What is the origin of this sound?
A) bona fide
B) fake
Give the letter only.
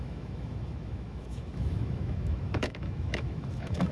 B